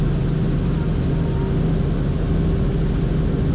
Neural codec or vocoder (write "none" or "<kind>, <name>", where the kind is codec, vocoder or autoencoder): none